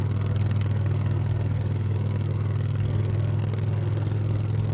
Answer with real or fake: fake